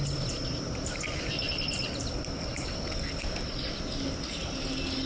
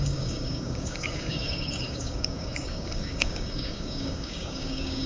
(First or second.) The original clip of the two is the first